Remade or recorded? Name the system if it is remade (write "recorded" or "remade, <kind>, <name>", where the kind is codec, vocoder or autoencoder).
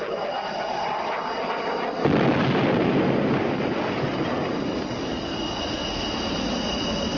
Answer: recorded